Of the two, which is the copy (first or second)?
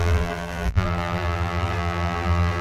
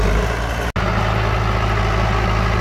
first